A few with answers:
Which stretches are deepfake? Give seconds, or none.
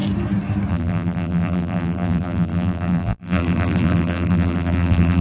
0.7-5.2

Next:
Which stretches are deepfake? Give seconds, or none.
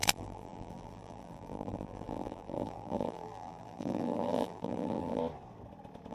0.0-5.2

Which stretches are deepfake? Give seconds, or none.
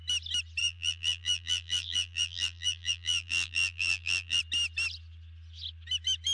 0.6-4.4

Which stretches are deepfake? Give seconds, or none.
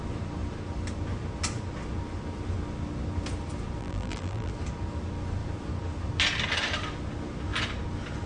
3.8-4.5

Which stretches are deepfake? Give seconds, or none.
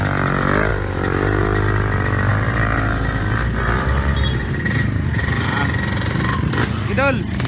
0.7-1.4; 2.3-5.6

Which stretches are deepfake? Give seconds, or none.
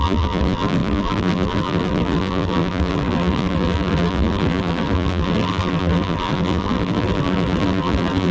0.0-8.3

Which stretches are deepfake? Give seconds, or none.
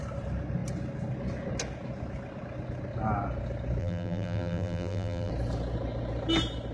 3.8-5.3